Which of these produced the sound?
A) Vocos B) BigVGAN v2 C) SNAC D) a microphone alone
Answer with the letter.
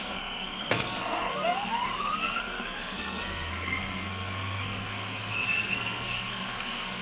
C